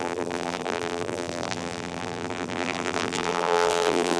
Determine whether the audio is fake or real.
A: fake